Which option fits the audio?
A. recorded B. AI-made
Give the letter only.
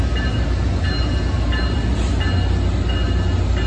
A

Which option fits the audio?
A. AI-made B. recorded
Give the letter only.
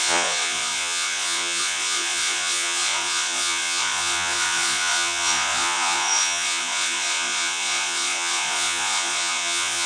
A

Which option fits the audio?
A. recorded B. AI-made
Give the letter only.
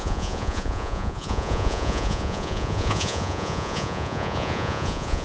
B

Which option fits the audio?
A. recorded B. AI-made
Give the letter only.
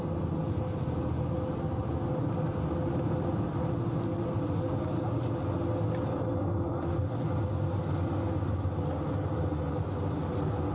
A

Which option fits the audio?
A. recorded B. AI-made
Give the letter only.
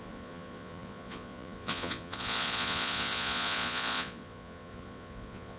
B